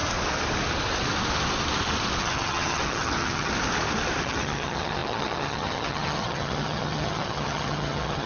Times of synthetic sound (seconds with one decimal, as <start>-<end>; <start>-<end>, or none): 2.2-3.5; 4.2-8.3